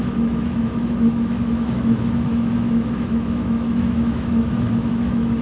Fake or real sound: fake